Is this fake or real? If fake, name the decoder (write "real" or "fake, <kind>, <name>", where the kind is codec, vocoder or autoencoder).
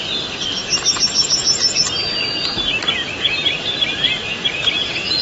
real